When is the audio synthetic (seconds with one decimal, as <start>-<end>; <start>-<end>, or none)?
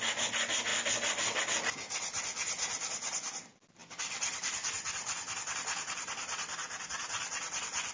0.7-1.4; 3.8-7.9